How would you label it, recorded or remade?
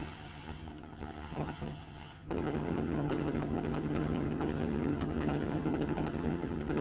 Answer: remade